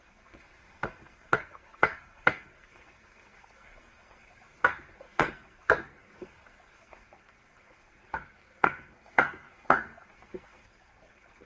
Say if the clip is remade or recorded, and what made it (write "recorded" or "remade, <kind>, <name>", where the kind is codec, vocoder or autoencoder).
remade, codec, SNAC